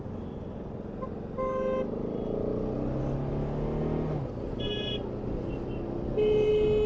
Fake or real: real